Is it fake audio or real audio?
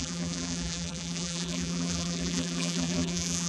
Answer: fake